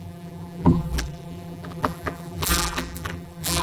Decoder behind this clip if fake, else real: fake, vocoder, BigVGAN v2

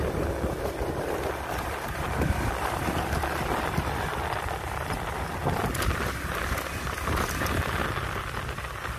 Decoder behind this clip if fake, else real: real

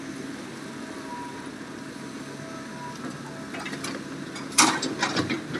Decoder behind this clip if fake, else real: real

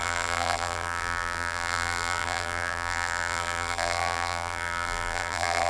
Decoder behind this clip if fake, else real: fake, vocoder, BigVGAN v2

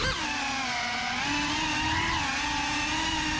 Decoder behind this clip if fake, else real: real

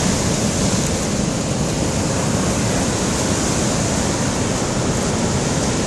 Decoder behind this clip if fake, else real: real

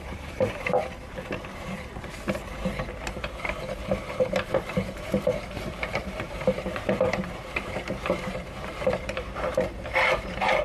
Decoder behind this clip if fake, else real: fake, vocoder, BigVGAN v2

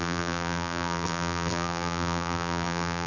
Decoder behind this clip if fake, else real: fake, vocoder, BigVGAN v2